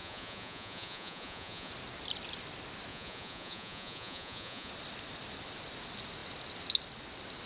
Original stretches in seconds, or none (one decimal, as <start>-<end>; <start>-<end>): 1.7-2.9; 4.7-7.5